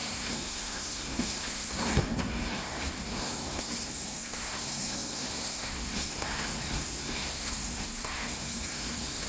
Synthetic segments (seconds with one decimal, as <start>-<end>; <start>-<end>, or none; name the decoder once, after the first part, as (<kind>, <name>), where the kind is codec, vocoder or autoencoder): 0.0-9.3 (codec, SNAC)